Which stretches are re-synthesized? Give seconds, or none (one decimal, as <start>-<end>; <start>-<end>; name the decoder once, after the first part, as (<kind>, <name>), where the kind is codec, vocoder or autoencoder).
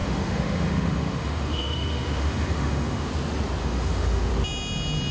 0.0-3.1 (autoencoder, DAC-VAE); 3.6-4.3